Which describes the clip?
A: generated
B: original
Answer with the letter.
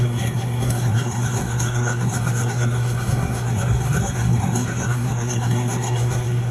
A